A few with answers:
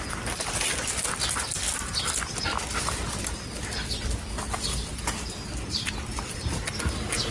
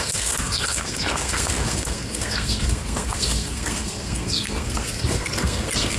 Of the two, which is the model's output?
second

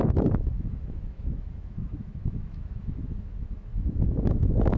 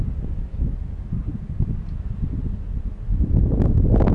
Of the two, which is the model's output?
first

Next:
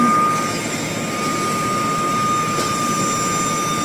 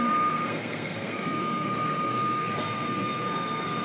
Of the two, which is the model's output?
second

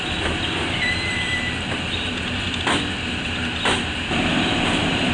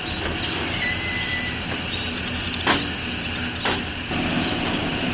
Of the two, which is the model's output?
first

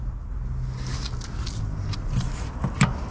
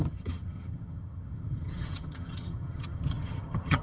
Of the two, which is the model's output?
second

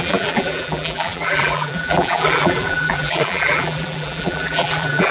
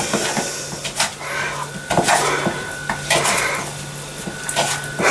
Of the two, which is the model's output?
first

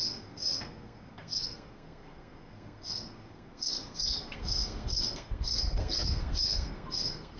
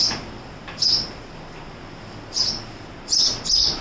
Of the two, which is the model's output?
first